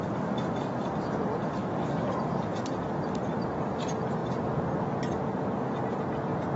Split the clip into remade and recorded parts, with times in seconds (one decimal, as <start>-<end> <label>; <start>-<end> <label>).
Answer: 0.0-1.6 recorded; 1.6-2.1 remade; 2.1-6.6 recorded